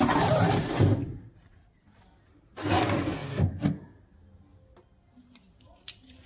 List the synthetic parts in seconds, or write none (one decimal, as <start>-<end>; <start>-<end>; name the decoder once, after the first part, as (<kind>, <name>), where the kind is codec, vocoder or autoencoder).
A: none